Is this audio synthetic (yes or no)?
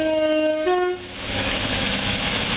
yes